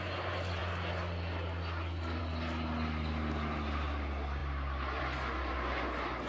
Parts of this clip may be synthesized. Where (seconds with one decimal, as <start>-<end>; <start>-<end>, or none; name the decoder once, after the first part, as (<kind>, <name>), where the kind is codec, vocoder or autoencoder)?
none